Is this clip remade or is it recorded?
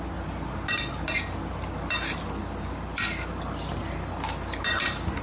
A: recorded